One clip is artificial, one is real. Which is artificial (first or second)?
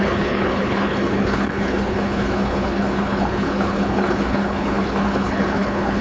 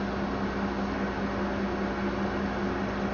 first